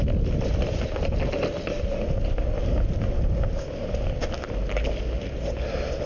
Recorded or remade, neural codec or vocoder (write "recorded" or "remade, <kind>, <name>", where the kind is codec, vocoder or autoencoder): recorded